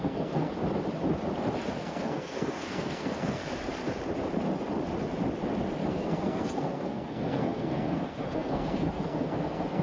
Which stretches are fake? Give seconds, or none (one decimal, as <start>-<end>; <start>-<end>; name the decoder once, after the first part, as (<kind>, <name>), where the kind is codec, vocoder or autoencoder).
0.0-0.5 (codec, SNAC); 1.8-3.4; 5.9-9.8